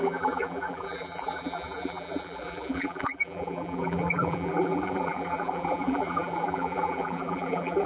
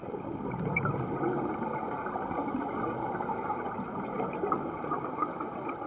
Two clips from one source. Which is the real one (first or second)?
second